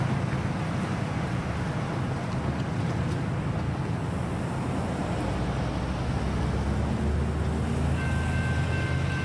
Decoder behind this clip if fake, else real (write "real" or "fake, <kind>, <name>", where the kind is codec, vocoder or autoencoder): real